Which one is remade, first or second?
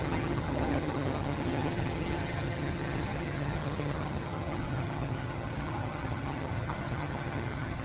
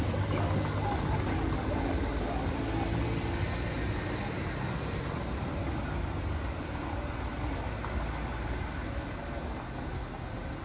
first